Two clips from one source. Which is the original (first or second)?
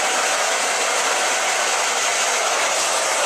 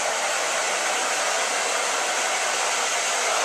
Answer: first